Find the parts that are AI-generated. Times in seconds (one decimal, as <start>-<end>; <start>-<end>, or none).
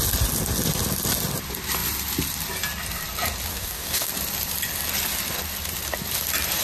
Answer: 3.5-4.1